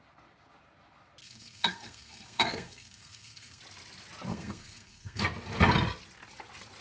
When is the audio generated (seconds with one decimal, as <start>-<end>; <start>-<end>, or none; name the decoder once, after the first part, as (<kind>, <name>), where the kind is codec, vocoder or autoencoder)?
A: 1.2-3.6 (codec, SNAC); 4.3-5.2